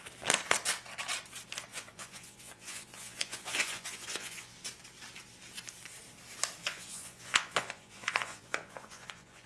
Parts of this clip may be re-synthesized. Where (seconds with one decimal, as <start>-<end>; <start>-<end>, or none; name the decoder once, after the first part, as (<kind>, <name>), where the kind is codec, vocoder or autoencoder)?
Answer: 1.7-4.5 (vocoder, Vocos); 6.6-9.5